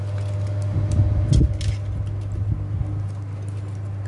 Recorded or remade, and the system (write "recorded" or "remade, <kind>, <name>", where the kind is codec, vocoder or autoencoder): recorded